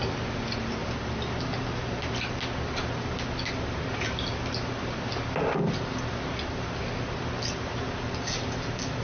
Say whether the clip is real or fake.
real